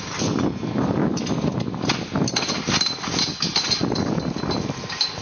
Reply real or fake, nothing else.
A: real